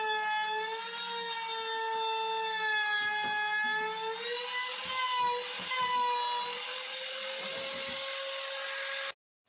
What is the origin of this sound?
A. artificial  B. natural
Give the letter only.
B